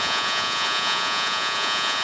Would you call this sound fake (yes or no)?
yes